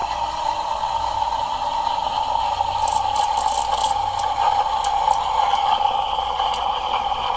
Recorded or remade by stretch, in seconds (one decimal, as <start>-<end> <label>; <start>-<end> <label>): 0.0-7.4 recorded